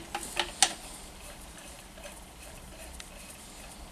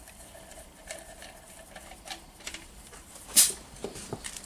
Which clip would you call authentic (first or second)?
first